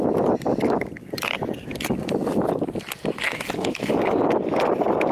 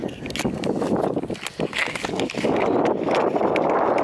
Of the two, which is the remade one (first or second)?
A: first